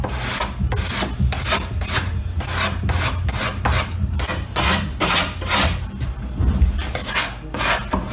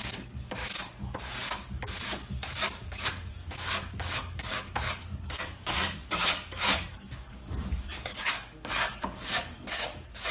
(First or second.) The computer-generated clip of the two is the second